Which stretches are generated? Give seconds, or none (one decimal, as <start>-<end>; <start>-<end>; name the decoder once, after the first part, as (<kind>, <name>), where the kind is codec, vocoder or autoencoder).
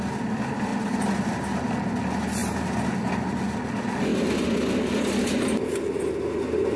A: 0.7-1.7 (vocoder, BigVGAN v2); 2.4-3.4; 4.1-5.1